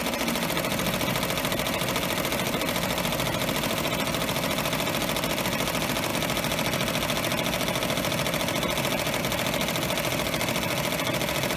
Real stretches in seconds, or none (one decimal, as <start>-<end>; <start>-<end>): 0.0-11.6

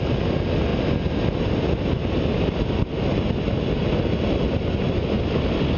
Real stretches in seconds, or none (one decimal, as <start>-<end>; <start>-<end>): 0.0-5.8

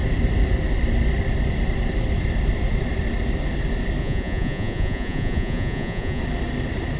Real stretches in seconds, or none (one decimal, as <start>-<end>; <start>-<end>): 0.0-4.0; 6.2-7.0